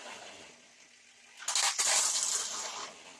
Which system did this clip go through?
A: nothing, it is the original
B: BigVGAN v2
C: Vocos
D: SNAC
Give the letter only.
A